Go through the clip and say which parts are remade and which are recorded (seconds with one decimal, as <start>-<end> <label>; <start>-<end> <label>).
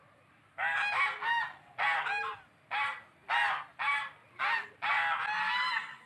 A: 0.0-6.1 recorded